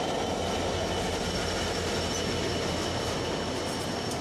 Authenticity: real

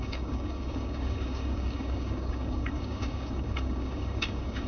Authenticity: fake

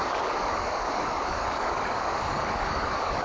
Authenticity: fake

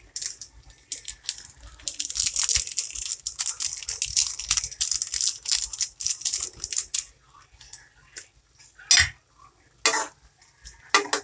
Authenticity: real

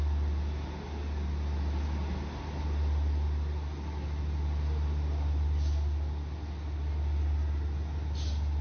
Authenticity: real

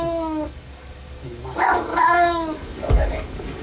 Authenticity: fake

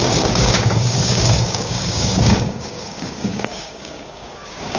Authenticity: fake